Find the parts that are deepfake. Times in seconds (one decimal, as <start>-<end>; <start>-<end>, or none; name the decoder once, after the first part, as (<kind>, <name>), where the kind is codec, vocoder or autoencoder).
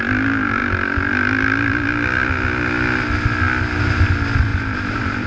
4.5-5.3 (vocoder, BigVGAN v2)